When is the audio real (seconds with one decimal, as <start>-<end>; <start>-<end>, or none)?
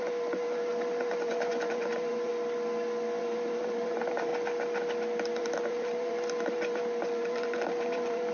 2.3-3.2; 4.3-5.4